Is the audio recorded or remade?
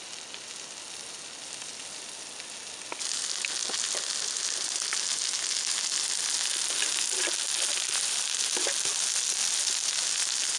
recorded